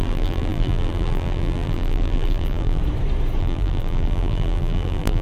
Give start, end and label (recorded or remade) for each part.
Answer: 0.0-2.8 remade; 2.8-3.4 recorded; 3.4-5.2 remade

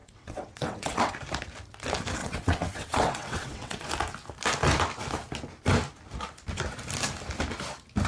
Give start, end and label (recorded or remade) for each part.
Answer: 0.0-1.1 remade; 1.1-2.2 recorded; 2.2-3.9 remade; 3.9-8.1 recorded

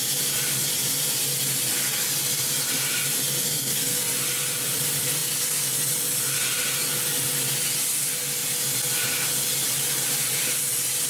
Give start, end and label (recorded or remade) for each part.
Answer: 0.0-3.4 recorded; 3.4-4.0 remade; 4.0-11.1 recorded

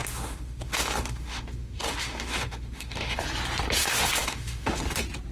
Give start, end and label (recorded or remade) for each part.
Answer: 0.0-3.2 remade; 3.2-3.8 recorded; 3.8-4.8 remade; 4.8-5.3 recorded

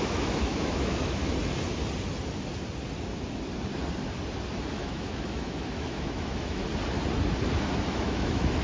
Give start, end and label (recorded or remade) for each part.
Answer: 0.0-1.2 remade; 1.2-4.7 recorded; 4.7-6.6 remade; 6.6-7.9 recorded; 7.9-8.6 remade